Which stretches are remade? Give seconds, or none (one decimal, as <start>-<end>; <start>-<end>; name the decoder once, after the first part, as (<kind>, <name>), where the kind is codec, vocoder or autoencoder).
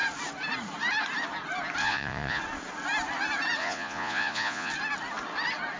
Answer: 1.8-2.4 (vocoder, Vocos); 3.6-4.7